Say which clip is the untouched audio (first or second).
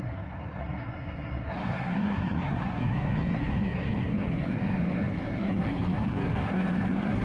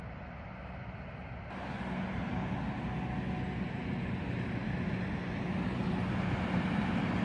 second